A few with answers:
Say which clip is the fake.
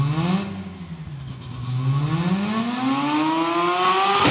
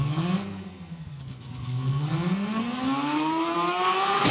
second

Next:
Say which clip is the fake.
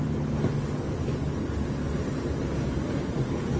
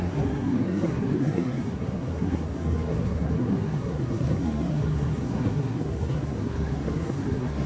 second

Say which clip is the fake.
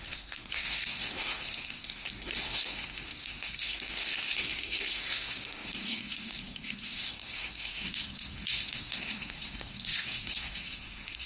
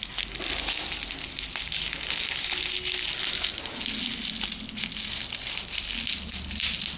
first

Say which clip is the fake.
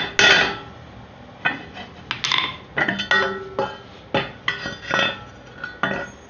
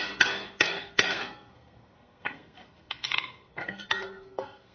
second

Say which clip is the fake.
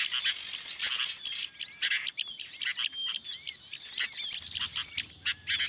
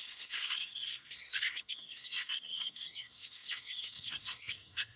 second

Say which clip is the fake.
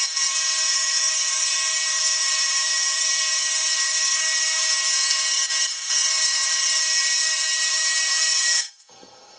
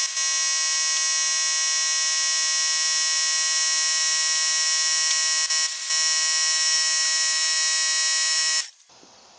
first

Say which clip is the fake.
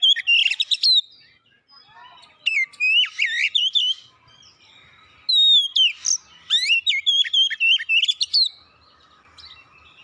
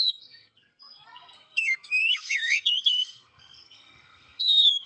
second